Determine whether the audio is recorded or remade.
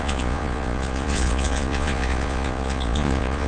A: remade